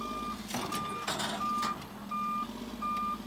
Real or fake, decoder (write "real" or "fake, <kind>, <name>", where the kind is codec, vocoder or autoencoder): real